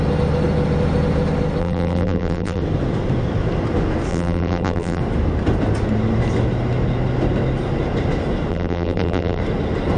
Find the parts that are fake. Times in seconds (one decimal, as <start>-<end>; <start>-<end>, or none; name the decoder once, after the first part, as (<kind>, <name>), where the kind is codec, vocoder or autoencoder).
1.6-2.6 (vocoder, BigVGAN v2); 4.1-5.0; 8.5-9.4